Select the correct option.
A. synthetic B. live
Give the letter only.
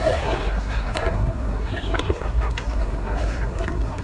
A